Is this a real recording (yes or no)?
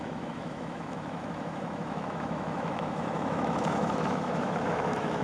no